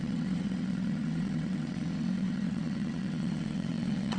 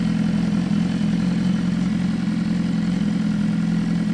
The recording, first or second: second